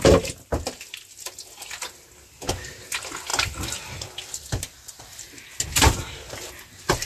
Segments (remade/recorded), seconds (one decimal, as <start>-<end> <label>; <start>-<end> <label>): 0.0-7.1 recorded